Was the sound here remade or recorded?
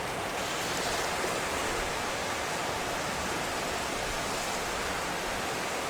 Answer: recorded